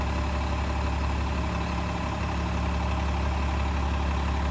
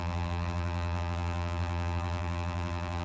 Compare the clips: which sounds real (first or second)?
first